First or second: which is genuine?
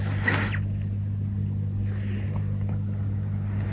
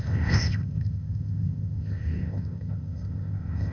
first